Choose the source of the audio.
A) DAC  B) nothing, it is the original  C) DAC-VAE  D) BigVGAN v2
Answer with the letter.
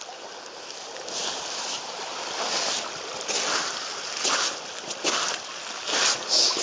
B